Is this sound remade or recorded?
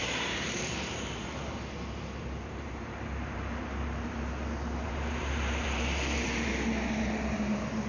remade